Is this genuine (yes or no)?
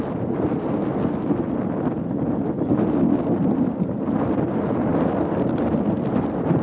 yes